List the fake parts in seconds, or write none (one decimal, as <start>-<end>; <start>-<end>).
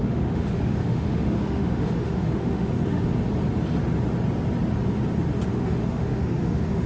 0.0-3.1; 5.5-6.9